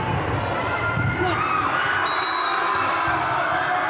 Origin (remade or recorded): recorded